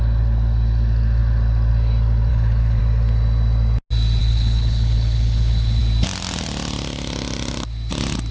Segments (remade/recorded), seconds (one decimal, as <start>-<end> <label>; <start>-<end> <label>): 0.0-2.3 recorded; 2.3-2.8 remade; 2.8-4.2 recorded; 4.2-5.8 remade; 5.8-8.3 recorded